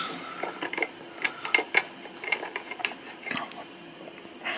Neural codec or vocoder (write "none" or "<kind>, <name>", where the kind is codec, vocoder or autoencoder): none